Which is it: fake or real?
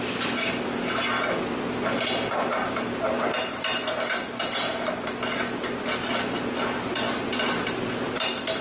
real